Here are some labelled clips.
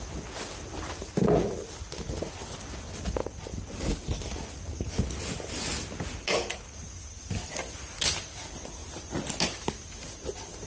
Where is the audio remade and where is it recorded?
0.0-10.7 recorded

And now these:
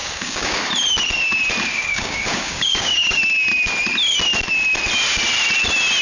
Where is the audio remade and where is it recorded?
0.0-0.7 remade; 0.7-1.7 recorded; 1.7-3.2 remade; 3.2-6.0 recorded

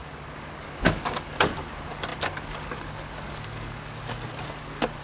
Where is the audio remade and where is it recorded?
0.0-5.0 remade